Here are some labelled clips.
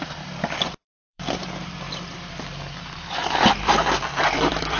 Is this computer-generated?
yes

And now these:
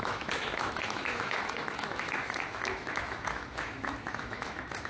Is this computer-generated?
yes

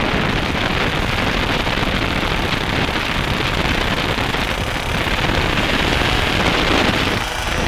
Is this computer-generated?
no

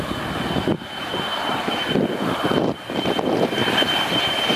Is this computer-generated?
no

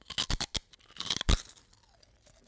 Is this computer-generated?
no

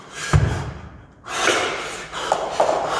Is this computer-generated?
no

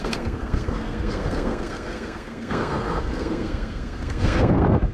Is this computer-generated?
yes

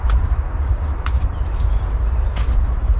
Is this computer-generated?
yes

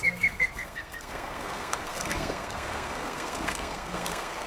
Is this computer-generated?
yes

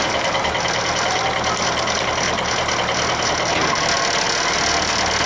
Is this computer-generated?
no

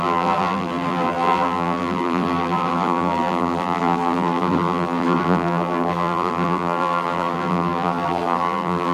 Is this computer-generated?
yes